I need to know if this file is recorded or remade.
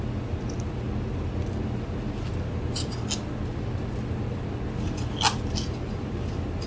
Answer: recorded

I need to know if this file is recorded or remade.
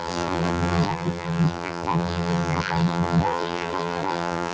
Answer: remade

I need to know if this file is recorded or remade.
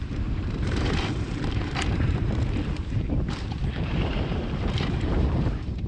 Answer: remade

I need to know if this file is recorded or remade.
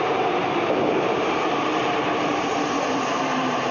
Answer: remade